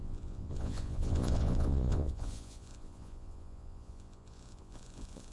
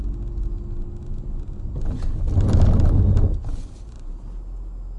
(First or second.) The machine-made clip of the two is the first